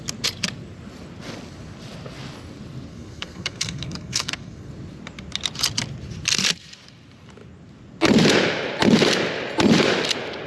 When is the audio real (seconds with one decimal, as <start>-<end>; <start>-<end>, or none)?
0.0-2.9; 4.7-10.5